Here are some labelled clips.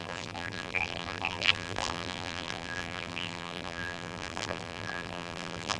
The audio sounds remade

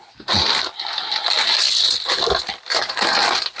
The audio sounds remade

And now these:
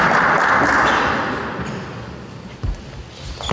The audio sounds recorded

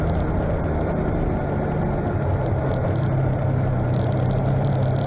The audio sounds remade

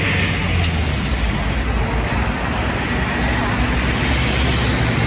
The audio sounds recorded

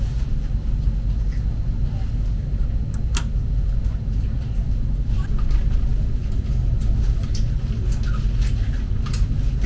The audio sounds recorded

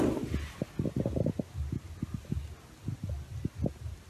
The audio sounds recorded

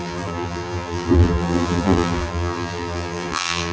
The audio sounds remade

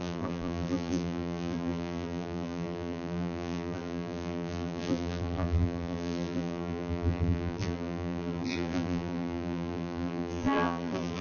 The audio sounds remade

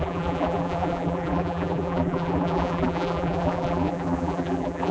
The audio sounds remade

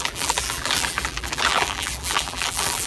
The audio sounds remade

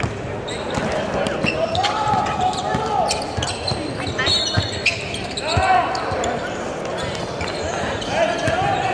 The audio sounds recorded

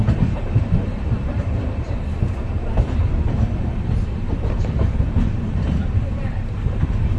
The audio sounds remade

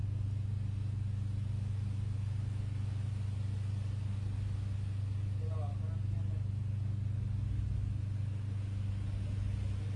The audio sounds recorded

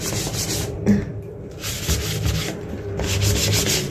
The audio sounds recorded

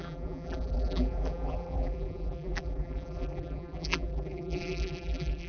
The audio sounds remade